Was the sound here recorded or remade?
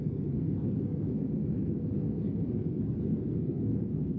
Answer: remade